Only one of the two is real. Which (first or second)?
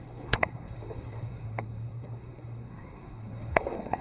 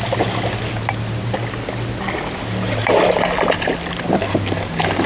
second